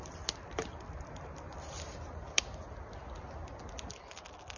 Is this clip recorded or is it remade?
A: recorded